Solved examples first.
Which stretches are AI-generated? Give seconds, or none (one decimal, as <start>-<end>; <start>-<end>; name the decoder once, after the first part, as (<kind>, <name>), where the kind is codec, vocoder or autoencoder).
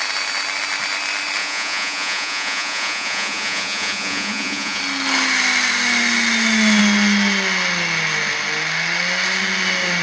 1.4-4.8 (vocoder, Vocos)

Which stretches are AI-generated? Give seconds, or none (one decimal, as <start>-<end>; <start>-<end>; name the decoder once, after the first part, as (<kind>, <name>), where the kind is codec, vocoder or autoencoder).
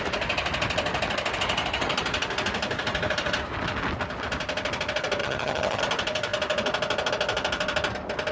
5.2-5.8 (vocoder, HiFi-GAN)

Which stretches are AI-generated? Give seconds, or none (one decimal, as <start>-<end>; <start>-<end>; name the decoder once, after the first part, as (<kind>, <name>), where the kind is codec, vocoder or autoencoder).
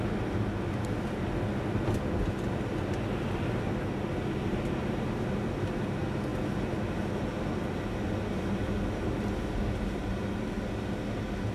4.5-5.1 (vocoder, BigVGAN v2)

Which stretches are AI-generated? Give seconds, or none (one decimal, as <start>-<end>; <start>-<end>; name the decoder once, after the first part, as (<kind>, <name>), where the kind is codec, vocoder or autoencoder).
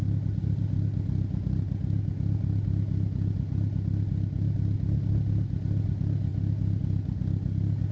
none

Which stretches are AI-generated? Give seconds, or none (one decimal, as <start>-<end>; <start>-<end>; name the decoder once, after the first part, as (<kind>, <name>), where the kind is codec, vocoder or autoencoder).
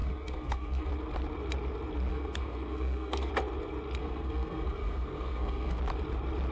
0.0-0.9 (codec, SNAC); 2.1-3.3; 4.0-5.8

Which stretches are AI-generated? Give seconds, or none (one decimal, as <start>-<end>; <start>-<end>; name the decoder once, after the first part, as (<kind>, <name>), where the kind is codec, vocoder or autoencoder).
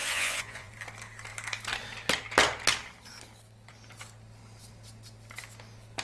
0.0-0.7 (vocoder, Vocos)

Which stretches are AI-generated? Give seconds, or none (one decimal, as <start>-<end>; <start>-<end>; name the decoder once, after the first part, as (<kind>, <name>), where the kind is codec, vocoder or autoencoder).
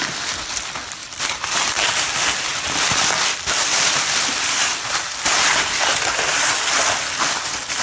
1.0-1.6 (vocoder, BigVGAN v2); 3.7-7.8